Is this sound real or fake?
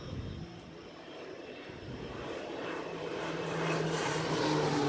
fake